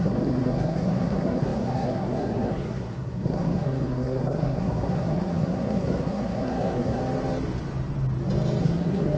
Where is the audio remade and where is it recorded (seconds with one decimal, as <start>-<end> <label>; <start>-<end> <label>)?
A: 0.0-7.0 remade; 7.0-8.6 recorded; 8.6-9.2 remade